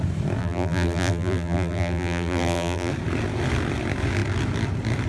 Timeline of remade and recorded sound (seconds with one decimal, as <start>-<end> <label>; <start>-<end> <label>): 0.0-0.4 recorded; 0.4-2.9 remade; 2.9-5.1 recorded